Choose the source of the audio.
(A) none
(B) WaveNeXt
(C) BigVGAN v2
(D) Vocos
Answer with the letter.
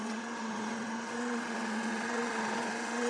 B